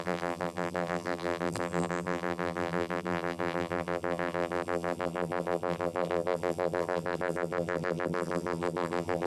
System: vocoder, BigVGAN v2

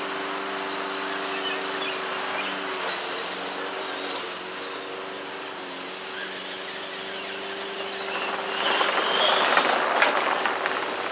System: none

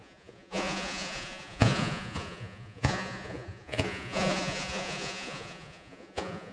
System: vocoder, Vocos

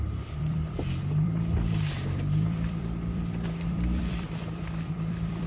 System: vocoder, BigVGAN v2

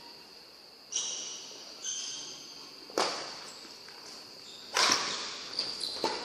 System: none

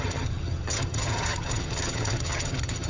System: vocoder, HiFi-GAN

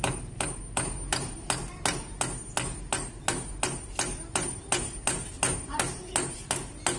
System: none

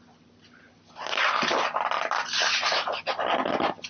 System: none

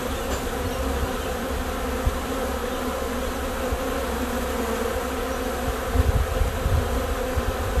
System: none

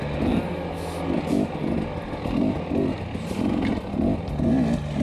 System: none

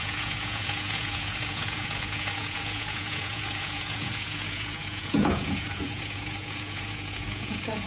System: vocoder, Vocos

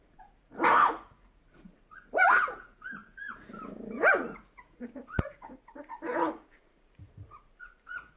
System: vocoder, Vocos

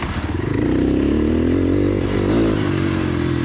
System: vocoder, BigVGAN v2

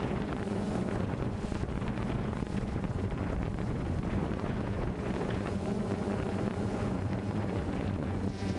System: vocoder, Vocos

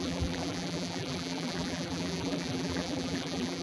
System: vocoder, BigVGAN v2